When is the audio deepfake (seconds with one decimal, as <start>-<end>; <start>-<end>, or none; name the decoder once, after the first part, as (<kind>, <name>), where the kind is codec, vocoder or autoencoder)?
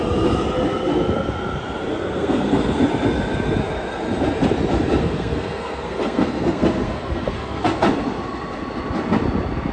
1.9-2.8 (codec, SNAC); 5.0-7.7